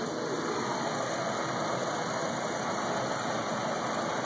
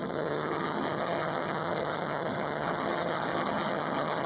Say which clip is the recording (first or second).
first